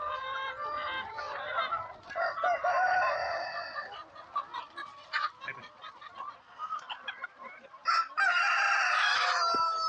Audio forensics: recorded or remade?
recorded